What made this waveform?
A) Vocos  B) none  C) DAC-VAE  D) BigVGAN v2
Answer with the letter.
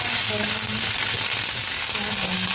B